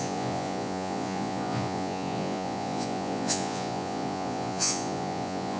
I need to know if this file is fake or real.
fake